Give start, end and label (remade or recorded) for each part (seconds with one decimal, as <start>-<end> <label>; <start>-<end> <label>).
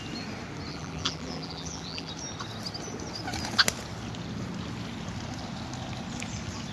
0.0-0.7 recorded; 0.7-2.1 remade; 2.1-6.7 recorded